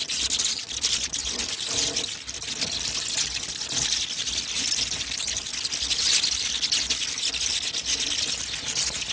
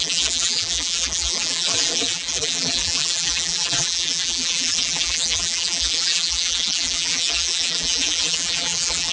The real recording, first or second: first